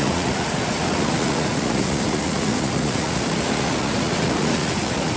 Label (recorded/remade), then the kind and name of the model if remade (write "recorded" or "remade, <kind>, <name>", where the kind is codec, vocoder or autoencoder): remade, vocoder, Vocos